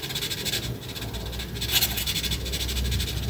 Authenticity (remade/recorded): recorded